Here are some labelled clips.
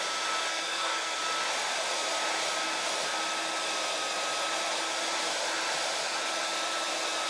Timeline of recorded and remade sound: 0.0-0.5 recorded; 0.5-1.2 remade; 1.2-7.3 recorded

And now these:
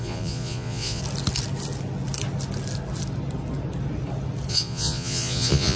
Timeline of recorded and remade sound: 0.0-1.0 remade; 1.0-4.5 recorded; 4.5-5.8 remade

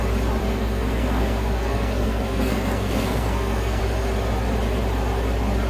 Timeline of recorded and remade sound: 0.0-0.4 recorded; 0.4-3.8 remade; 3.8-5.7 recorded

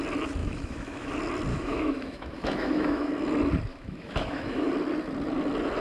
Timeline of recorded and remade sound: 0.0-0.4 recorded; 0.4-1.1 remade; 1.1-1.5 recorded; 1.5-3.1 remade; 3.1-3.7 recorded; 3.7-4.7 remade; 4.7-5.8 recorded

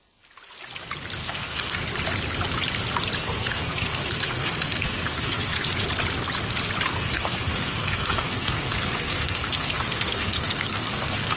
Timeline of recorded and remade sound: 0.0-1.2 recorded; 1.2-1.8 remade; 1.8-3.2 recorded; 3.2-5.7 remade; 5.7-6.9 recorded; 6.9-11.4 remade

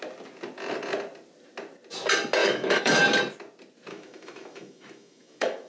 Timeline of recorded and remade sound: 0.0-2.4 recorded; 2.4-3.0 remade; 3.0-3.9 recorded; 3.9-5.7 remade

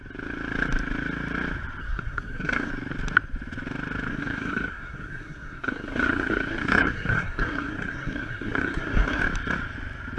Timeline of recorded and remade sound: 0.0-1.8 recorded; 1.8-2.7 remade; 2.7-4.1 recorded; 4.1-9.2 remade; 9.2-10.2 recorded

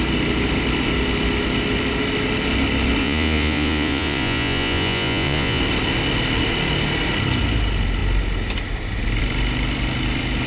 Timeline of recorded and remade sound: 0.0-3.0 recorded; 3.0-5.6 remade; 5.6-10.5 recorded